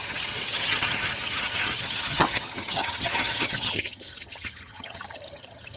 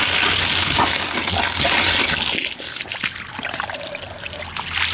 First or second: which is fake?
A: first